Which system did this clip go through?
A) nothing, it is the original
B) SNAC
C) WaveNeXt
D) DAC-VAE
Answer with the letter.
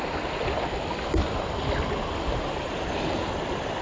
A